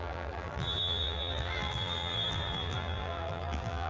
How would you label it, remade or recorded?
remade